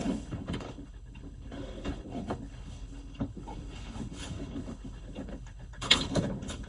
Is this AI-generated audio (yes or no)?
yes